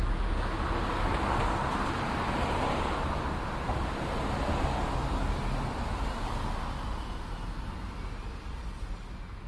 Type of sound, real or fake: real